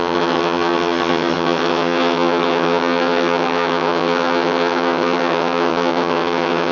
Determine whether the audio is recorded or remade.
remade